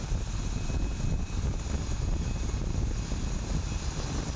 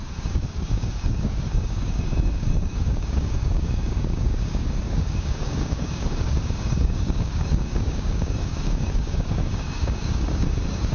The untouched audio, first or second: first